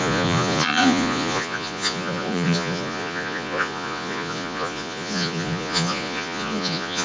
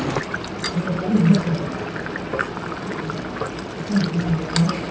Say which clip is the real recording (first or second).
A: second